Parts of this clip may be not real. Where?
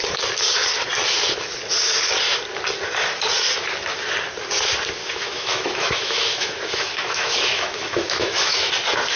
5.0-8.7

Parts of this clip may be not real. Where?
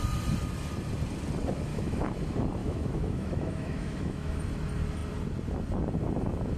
1.7-2.2; 2.6-4.4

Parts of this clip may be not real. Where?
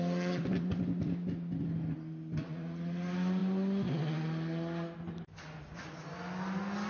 none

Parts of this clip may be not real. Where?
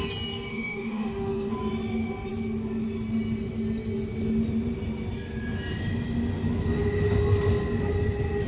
0.5-1.5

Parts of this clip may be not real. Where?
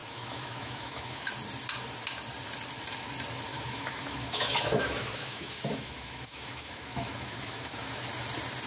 0.0-1.3; 3.5-8.1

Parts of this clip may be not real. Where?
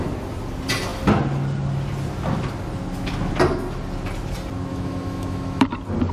4.7-5.6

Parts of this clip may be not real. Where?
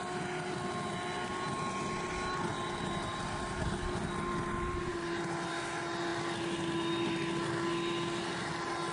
none